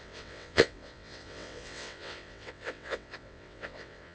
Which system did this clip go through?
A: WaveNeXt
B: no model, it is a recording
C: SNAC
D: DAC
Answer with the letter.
A